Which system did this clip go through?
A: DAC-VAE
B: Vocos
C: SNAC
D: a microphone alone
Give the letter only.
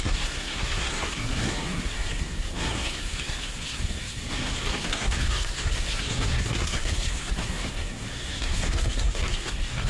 C